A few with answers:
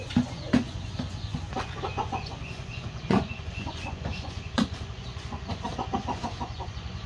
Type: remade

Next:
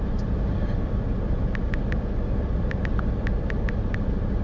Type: remade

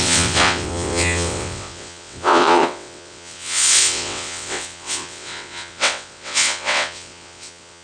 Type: remade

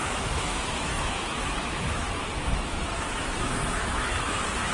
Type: remade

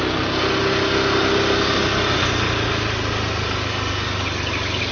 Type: recorded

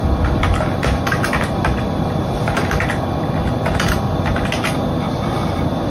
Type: recorded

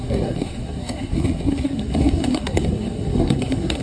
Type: remade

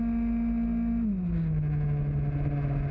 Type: recorded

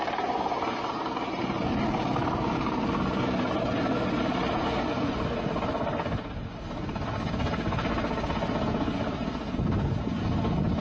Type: recorded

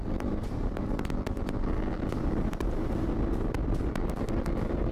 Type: recorded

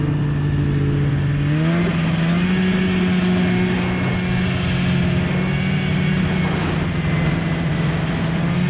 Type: recorded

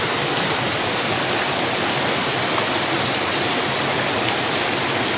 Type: recorded